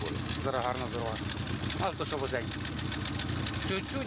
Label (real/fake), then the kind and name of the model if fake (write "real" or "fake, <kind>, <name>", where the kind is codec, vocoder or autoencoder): real